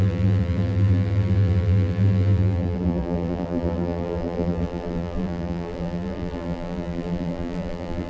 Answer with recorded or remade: remade